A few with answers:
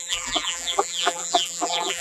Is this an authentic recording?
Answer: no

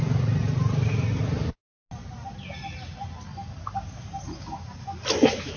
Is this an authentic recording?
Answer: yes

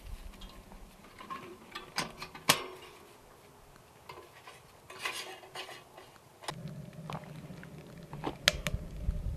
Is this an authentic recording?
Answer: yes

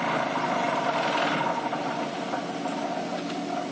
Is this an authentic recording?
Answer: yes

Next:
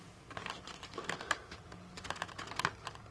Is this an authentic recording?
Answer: yes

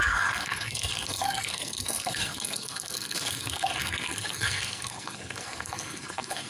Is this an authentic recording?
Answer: no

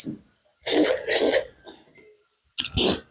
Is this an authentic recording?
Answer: yes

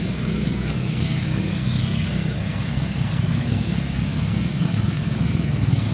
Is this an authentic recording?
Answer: no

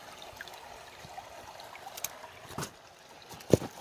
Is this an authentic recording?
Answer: yes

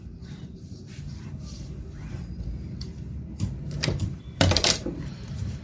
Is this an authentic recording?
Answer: no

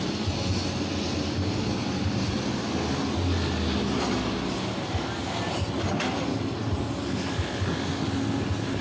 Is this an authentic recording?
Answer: yes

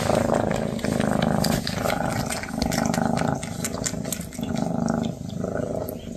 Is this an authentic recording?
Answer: yes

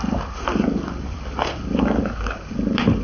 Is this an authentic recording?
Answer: yes